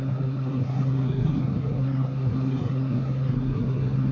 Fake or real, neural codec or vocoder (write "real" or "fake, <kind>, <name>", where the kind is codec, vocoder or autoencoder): fake, codec, SNAC